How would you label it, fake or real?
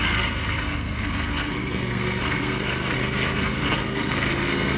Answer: fake